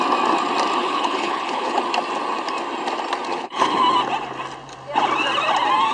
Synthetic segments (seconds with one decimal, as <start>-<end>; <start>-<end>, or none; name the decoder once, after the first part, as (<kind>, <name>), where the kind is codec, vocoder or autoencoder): 0.8-1.8 (codec, HILCodec); 3.3-3.8